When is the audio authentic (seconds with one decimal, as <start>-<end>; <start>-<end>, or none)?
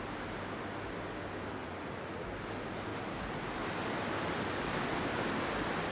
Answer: 0.0-1.6; 2.3-5.9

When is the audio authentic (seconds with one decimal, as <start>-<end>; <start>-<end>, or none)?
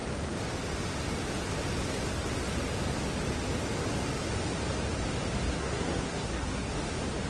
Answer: 0.0-5.5; 6.7-7.3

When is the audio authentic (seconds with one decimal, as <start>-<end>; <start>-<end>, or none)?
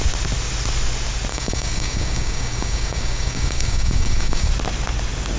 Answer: 0.0-1.3; 4.5-5.4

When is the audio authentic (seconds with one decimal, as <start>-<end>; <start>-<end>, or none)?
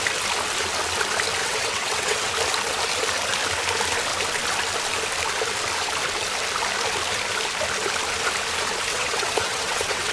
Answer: 0.0-1.4; 2.3-8.9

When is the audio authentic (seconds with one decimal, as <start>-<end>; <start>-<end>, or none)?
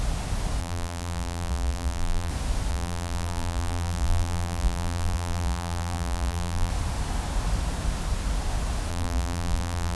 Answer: 0.0-0.6; 2.3-2.7; 6.7-8.9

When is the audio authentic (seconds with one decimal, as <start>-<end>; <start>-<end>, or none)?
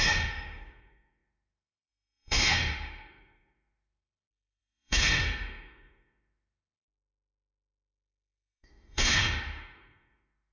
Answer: none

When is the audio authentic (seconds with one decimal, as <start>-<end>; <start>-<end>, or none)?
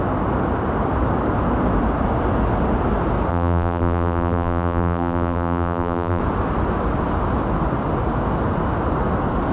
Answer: 0.0-3.3; 6.2-9.5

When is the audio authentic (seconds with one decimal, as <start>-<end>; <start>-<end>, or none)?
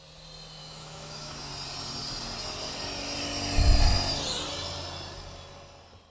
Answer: 0.0-0.6; 1.5-6.1